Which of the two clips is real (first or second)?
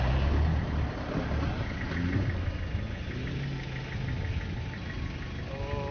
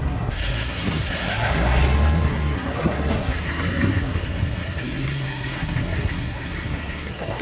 first